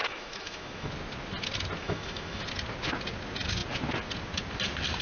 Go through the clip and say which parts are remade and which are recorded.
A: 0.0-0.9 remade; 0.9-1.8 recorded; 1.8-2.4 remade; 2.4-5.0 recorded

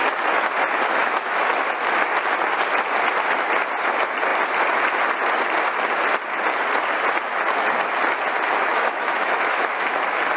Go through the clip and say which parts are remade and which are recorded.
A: 0.0-1.0 recorded; 1.0-1.5 remade; 1.5-8.7 recorded; 8.7-10.0 remade; 10.0-10.4 recorded

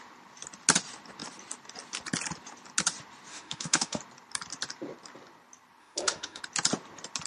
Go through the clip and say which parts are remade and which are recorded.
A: 0.0-3.3 recorded; 3.3-4.0 remade; 4.0-5.8 recorded; 5.8-6.4 remade; 6.4-7.3 recorded